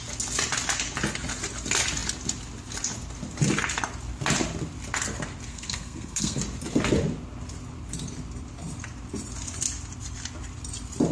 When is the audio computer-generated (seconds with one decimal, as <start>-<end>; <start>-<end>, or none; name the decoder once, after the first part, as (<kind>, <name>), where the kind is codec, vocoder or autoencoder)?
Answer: 5.5-6.4 (codec, SNAC)